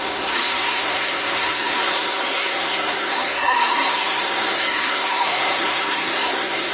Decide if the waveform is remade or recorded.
remade